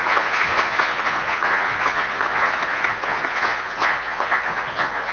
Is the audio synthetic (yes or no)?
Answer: yes